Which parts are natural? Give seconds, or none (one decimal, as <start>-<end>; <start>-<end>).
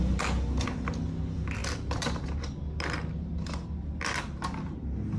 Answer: 0.0-5.2